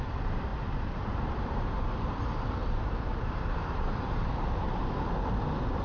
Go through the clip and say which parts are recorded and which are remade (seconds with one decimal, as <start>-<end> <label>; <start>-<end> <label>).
0.0-0.5 recorded; 0.5-2.2 remade; 2.2-2.6 recorded; 2.6-4.6 remade; 4.6-5.8 recorded